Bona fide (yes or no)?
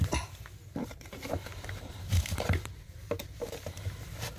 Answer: no